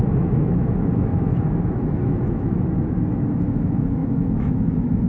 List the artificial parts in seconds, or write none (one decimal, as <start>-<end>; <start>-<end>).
0.0-5.1